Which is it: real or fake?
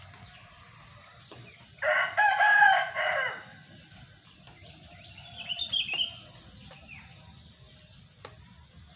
real